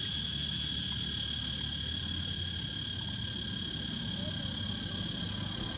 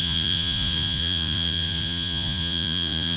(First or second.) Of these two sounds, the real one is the first